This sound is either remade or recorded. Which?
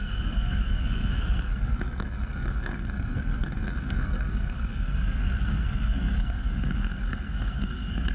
remade